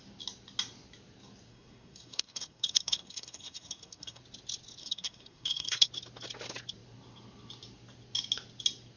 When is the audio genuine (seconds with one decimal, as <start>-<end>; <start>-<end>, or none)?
0.0-1.5; 4.2-4.8; 5.9-9.0